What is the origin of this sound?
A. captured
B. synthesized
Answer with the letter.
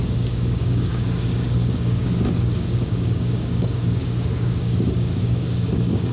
B